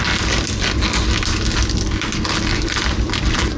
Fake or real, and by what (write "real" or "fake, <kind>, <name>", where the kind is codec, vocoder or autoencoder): real